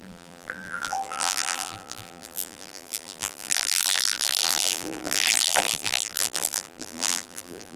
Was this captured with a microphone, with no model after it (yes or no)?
no